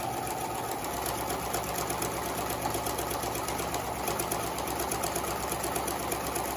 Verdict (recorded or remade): recorded